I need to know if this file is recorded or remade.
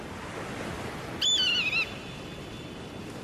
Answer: recorded